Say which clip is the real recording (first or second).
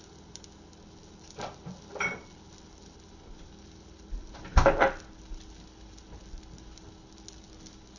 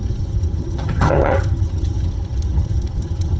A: first